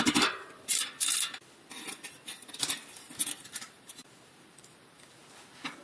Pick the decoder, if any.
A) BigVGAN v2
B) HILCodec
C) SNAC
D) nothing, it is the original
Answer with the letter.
D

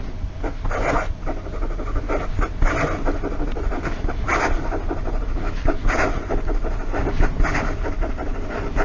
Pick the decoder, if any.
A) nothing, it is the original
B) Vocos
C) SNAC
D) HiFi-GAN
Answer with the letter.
A